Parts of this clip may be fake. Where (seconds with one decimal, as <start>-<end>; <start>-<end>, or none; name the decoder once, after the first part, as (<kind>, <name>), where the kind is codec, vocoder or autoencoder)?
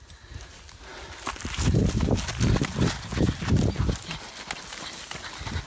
none